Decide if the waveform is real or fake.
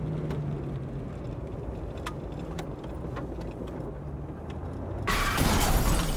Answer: real